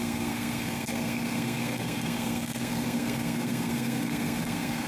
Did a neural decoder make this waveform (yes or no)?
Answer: yes